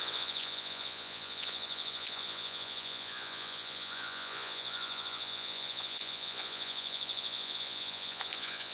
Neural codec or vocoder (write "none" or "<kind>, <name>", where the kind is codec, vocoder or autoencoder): vocoder, Vocos